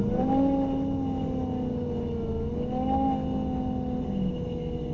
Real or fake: real